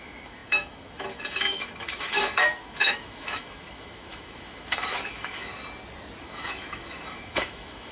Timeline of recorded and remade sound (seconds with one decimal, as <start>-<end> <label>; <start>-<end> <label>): 0.0-5.5 remade; 5.5-6.2 recorded; 6.2-7.9 remade

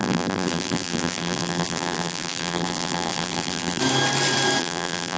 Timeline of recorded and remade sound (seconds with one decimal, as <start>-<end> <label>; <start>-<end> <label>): 0.0-3.8 remade; 3.8-4.6 recorded; 4.6-5.2 remade

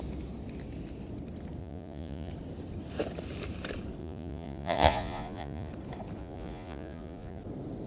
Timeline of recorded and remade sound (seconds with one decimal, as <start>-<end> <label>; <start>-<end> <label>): 0.0-1.6 recorded; 1.6-2.3 remade; 2.3-4.0 recorded; 4.0-5.7 remade; 5.7-6.2 recorded; 6.2-7.4 remade; 7.4-7.9 recorded